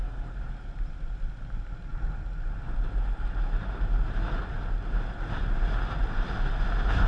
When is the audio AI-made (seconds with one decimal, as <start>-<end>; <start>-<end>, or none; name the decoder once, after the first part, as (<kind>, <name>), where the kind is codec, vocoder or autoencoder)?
none